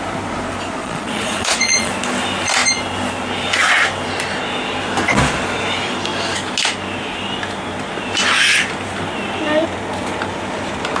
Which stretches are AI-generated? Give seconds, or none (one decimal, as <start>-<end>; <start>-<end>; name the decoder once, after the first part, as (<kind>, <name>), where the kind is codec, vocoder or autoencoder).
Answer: 0.8-1.9 (vocoder, Vocos)

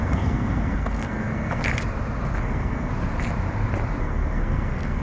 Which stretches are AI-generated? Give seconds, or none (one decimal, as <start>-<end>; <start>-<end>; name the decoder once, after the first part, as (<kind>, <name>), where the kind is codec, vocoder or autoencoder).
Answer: 0.0-1.7 (codec, SNAC); 2.4-2.9; 4.0-5.0

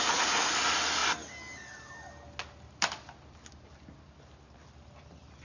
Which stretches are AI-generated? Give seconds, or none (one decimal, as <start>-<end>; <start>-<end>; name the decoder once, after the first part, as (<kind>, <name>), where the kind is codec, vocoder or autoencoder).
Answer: none

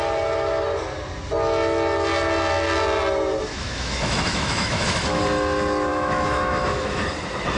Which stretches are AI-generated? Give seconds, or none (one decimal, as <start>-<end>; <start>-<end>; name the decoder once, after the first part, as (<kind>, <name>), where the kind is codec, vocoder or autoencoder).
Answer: 3.5-5.2 (autoencoder, DAC-VAE); 5.9-7.0